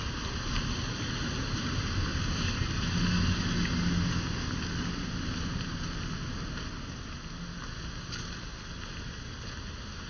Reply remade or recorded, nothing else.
recorded